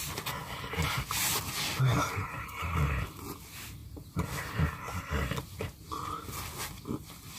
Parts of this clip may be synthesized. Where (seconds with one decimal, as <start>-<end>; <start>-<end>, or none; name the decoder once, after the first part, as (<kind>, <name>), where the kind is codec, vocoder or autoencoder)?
none